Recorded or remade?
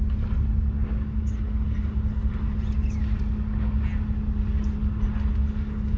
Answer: recorded